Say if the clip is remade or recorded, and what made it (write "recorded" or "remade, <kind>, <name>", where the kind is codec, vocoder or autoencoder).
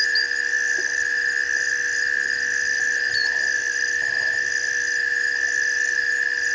recorded